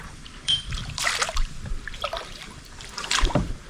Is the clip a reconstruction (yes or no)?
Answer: yes